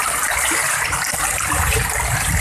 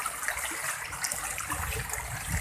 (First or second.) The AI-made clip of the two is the first